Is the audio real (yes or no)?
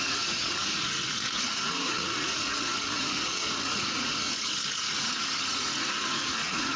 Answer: no